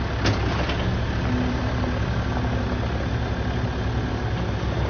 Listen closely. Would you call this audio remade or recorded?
recorded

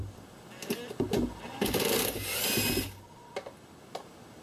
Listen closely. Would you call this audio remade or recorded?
recorded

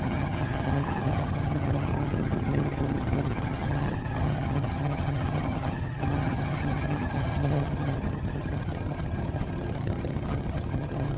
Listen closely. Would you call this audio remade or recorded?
remade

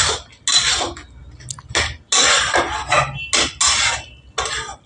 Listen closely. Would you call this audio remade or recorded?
recorded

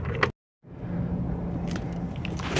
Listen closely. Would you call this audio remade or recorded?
recorded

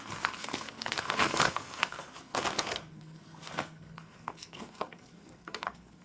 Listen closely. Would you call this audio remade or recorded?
remade